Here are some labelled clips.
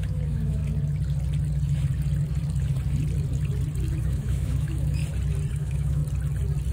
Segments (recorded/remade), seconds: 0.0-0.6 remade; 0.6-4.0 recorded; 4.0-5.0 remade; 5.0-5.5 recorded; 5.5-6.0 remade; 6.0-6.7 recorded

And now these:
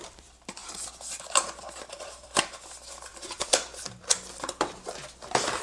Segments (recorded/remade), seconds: 0.0-5.6 remade

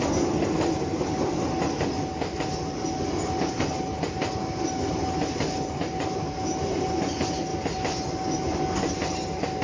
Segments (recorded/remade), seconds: 0.0-9.6 recorded

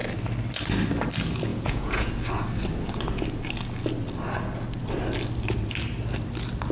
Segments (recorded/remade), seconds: 0.0-1.5 recorded; 1.5-2.1 remade; 2.1-6.7 recorded